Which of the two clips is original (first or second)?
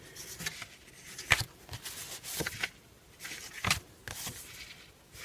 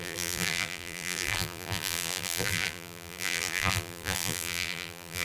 first